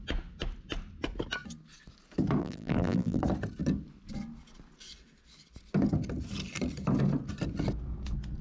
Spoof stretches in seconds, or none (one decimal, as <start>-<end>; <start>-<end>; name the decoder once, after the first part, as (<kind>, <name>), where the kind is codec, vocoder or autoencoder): 2.4-3.2 (vocoder, BigVGAN v2)